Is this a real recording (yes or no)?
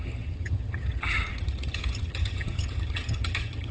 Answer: no